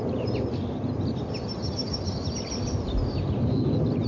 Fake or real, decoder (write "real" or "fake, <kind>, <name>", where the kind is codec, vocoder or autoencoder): real